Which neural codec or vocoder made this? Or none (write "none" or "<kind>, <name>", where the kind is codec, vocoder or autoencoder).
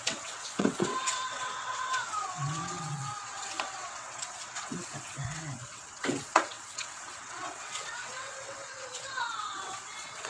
vocoder, WaveNeXt